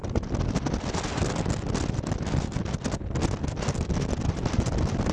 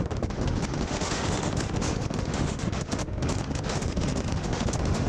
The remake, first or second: second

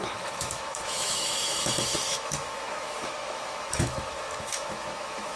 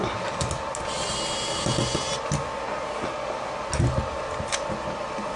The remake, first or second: first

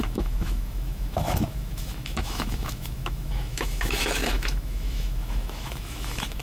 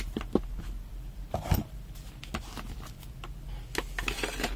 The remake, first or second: first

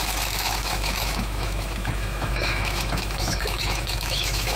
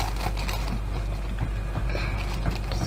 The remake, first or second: first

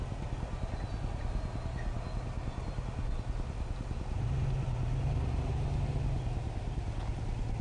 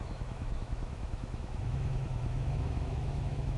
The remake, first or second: second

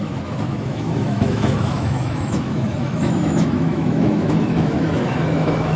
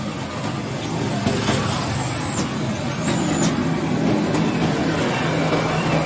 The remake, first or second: first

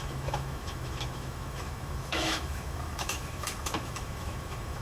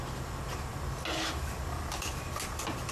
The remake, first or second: first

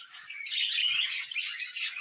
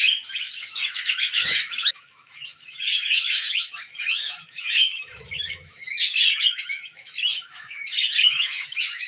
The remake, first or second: second